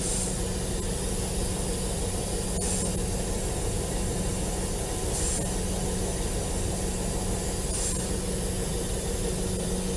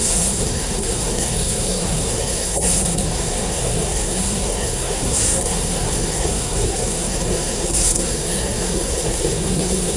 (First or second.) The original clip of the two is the first